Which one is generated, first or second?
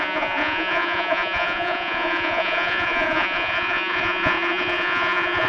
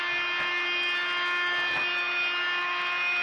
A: first